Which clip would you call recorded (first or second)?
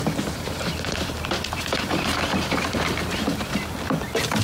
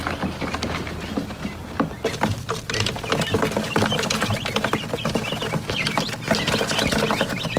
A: second